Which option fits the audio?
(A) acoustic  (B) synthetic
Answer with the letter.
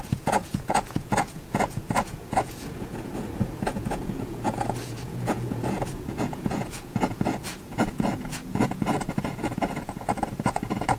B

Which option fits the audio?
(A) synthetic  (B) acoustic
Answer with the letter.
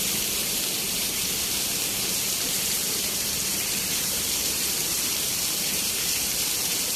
A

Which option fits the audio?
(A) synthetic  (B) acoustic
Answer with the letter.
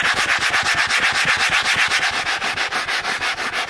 B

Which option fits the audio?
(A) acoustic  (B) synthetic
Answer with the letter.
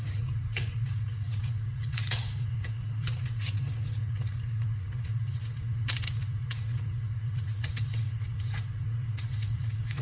B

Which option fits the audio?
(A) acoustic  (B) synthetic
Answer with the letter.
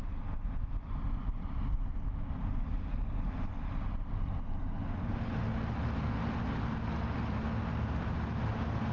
A